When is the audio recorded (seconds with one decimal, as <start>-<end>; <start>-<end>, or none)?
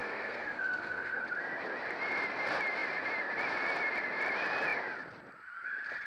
1.2-6.1